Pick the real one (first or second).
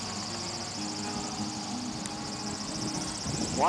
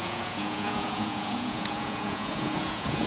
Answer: first